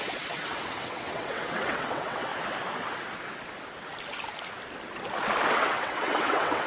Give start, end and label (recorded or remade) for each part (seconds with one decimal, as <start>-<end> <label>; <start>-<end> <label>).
0.0-2.3 remade; 2.3-5.5 recorded; 5.5-6.7 remade